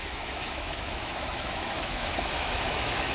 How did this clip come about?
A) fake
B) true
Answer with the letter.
A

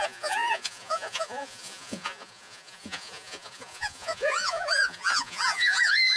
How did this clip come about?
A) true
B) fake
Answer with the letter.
B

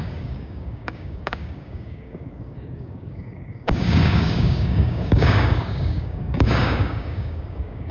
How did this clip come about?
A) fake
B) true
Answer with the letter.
A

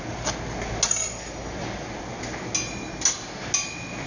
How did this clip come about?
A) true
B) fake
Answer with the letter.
A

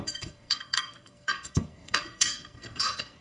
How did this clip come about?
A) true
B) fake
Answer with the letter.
B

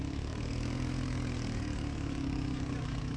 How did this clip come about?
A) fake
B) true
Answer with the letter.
A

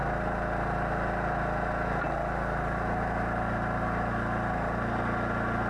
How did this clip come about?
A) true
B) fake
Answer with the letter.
A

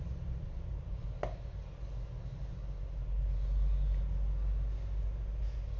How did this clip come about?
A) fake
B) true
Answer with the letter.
B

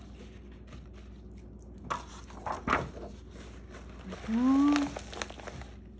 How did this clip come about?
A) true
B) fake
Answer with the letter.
A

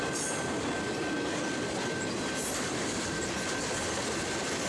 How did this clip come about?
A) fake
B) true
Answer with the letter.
B